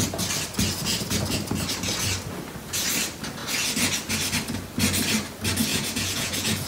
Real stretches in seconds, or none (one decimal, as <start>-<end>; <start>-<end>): 0.0-5.7